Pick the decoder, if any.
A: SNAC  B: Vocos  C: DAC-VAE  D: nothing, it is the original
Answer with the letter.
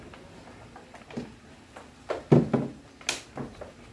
D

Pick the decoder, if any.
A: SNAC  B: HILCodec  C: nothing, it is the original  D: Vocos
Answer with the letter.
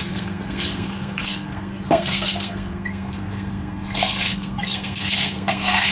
A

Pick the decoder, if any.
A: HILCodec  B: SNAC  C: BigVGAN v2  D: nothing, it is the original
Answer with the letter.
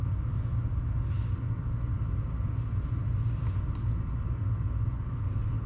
D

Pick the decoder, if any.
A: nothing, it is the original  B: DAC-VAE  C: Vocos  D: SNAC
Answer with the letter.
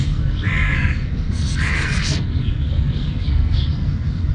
D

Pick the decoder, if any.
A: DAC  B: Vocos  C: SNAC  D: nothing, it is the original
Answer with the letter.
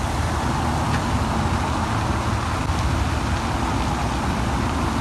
D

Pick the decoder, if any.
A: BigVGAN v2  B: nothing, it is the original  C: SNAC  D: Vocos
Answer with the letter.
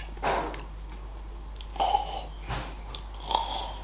B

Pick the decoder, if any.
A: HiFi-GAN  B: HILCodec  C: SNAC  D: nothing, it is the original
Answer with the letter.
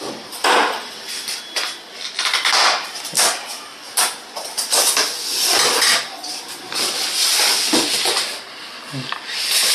D